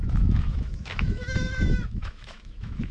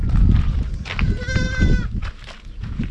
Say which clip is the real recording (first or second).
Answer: second